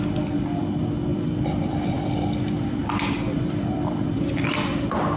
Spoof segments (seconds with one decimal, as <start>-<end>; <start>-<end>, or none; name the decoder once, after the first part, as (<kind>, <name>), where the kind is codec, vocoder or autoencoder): 1.1-2.1 (vocoder, BigVGAN v2); 2.8-4.5